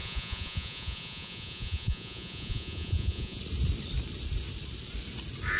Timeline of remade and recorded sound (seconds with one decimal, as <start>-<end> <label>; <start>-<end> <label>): 0.0-3.4 remade; 3.4-5.6 recorded